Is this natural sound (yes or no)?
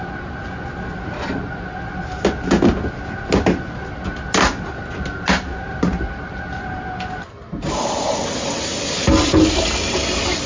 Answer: yes